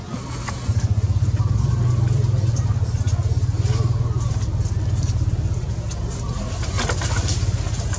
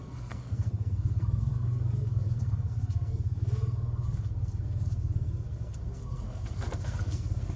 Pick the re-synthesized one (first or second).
second